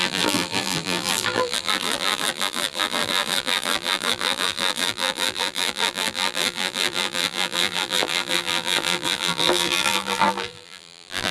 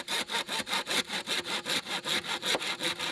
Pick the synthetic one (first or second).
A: first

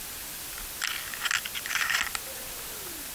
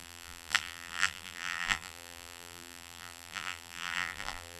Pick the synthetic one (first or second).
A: second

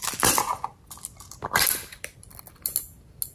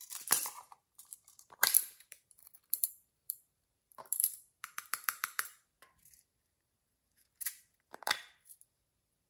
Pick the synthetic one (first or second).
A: second